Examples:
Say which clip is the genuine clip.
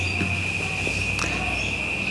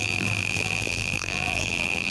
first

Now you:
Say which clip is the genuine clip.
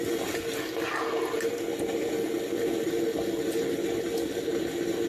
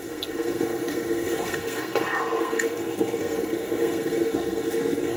first